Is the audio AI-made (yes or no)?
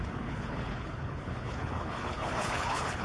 yes